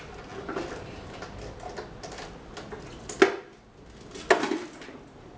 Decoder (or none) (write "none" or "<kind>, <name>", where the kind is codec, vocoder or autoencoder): none